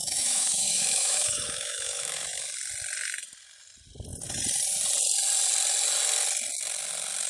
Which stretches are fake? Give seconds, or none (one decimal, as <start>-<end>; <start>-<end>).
0.0-2.4